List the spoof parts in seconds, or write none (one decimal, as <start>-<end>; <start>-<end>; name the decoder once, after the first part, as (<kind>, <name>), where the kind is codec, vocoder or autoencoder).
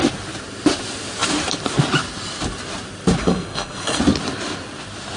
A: 3.2-4.0 (codec, SNAC)